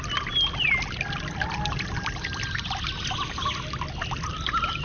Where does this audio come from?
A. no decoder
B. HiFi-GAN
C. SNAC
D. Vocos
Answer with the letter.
A